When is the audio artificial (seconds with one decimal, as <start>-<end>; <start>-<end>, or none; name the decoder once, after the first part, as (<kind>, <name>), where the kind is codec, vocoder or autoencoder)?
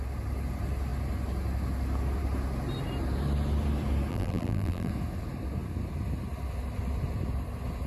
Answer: 4.1-4.9 (vocoder, BigVGAN v2)